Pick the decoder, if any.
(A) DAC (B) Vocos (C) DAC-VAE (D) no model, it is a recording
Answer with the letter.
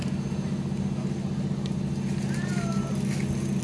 D